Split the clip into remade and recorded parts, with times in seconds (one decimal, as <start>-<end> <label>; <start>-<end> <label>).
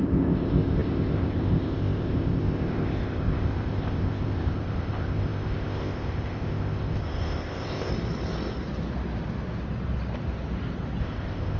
0.0-7.9 remade; 7.9-11.0 recorded; 11.0-11.6 remade